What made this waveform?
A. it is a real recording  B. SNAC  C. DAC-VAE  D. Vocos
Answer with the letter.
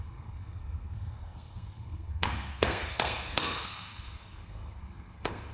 B